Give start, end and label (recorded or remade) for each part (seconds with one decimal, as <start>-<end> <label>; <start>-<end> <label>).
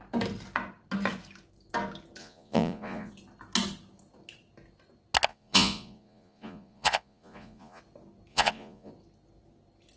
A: 0.0-2.2 recorded; 2.2-3.1 remade; 3.1-5.3 recorded; 5.3-7.8 remade; 7.8-8.3 recorded; 8.3-8.9 remade; 8.9-10.0 recorded